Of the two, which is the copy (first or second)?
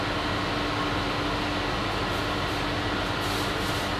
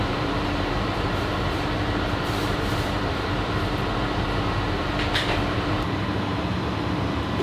second